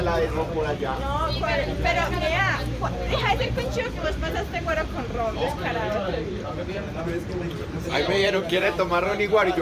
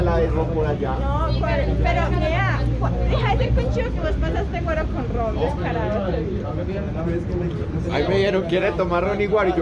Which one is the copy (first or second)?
first